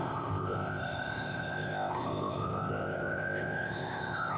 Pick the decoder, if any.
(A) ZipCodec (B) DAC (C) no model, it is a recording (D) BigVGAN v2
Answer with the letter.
A